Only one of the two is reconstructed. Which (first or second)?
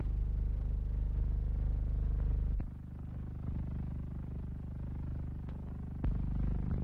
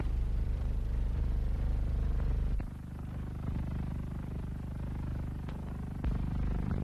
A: second